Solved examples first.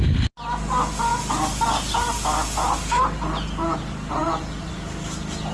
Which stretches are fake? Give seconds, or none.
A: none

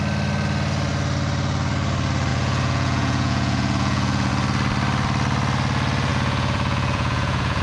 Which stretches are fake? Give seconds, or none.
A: 2.3-4.3; 6.1-7.6

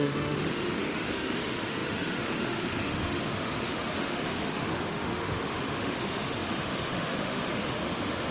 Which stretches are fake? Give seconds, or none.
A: 0.0-8.3

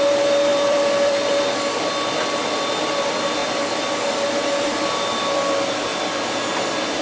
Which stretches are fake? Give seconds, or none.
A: 0.0-7.0

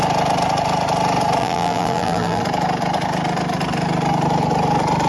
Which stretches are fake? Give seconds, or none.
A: 1.4-2.4

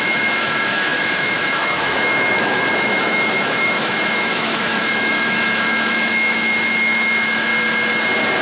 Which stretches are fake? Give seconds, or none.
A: 0.0-7.5

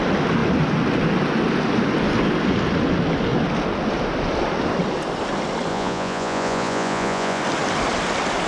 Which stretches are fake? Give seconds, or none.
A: 5.7-7.4

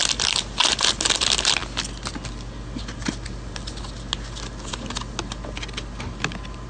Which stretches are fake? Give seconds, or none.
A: none